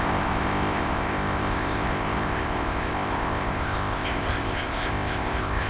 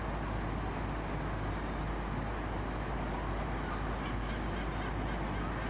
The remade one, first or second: first